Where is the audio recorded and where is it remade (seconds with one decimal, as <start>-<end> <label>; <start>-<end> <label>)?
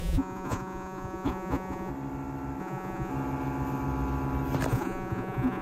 0.0-1.9 remade; 1.9-2.6 recorded; 2.6-3.1 remade; 3.1-4.7 recorded; 4.7-5.6 remade